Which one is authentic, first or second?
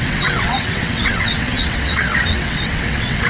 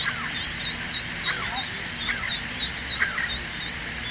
second